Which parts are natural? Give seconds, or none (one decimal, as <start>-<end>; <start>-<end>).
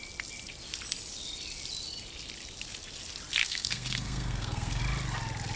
0.0-3.4; 4.8-5.6